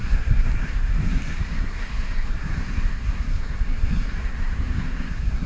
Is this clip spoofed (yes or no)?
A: yes